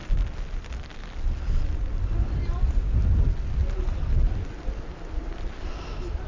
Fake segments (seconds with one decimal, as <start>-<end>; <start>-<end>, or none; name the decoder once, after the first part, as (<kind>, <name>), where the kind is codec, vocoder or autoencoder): none